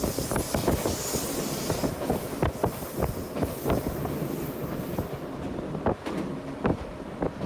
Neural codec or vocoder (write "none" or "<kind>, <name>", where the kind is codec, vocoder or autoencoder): none